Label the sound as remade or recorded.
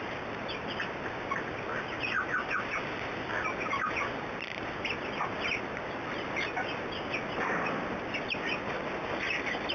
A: recorded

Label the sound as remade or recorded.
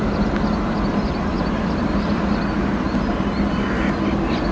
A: recorded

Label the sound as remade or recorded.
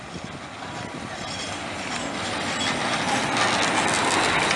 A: recorded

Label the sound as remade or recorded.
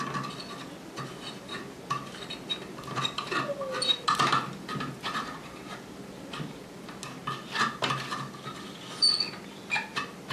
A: recorded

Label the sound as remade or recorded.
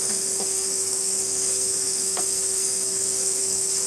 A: remade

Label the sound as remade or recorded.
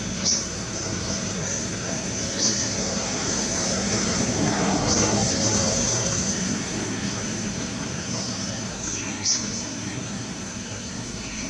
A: remade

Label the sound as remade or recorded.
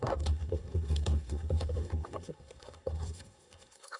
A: remade